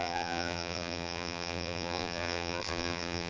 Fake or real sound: fake